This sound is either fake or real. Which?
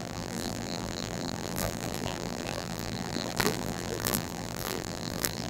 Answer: fake